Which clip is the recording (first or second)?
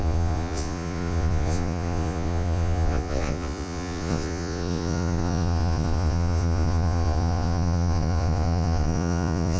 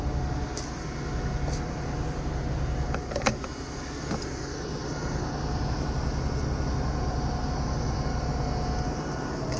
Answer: second